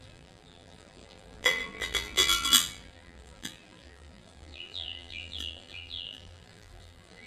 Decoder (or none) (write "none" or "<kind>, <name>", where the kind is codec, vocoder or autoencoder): vocoder, BigVGAN v2